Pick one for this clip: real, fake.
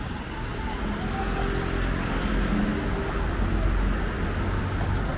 real